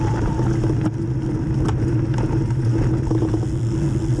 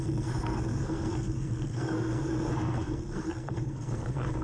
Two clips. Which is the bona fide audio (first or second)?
first